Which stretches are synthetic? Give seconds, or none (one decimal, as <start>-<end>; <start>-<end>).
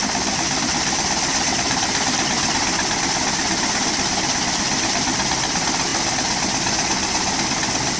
0.6-5.9